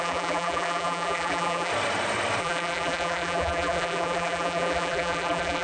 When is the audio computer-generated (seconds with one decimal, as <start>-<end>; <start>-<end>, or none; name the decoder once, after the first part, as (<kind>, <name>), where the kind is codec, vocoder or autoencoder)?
0.0-1.7 (vocoder, BigVGAN v2); 2.4-5.6